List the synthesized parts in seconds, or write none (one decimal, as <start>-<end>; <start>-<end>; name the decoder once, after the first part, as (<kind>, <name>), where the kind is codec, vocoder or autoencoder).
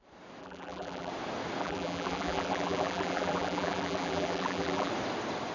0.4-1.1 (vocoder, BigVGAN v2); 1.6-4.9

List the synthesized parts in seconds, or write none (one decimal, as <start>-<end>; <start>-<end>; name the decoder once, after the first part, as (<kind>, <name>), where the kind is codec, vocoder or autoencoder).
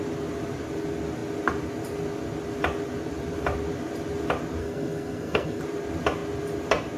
4.6-5.6 (codec, SNAC)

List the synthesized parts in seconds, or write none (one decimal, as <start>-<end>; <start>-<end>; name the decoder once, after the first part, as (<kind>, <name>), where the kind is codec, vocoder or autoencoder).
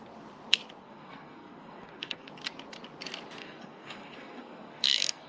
0.8-2.3 (codec, SNAC); 3.4-5.3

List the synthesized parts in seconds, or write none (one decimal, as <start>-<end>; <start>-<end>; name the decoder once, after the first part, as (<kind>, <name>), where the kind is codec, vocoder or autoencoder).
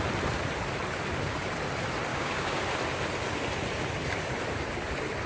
2.1-2.6 (codec, DAC)